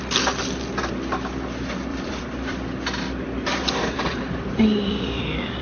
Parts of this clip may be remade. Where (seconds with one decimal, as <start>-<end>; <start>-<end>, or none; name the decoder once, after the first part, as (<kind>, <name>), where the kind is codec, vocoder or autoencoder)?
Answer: 1.9-5.6 (vocoder, BigVGAN v2)